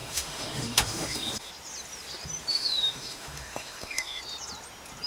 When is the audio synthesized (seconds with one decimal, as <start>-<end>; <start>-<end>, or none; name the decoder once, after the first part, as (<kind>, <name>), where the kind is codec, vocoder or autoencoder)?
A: 0.0-1.5 (autoencoder, DAC-VAE); 2.5-4.2